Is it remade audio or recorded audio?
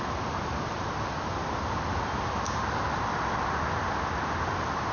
recorded